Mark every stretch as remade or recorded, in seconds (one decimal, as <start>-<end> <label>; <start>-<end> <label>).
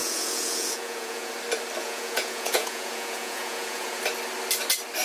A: 0.0-1.3 remade; 1.3-1.8 recorded; 1.8-4.0 remade; 4.0-5.0 recorded